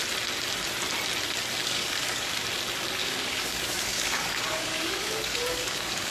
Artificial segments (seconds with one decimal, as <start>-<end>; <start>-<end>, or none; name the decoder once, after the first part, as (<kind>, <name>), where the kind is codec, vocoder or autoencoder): 1.6-2.4 (codec, DAC); 3.0-6.1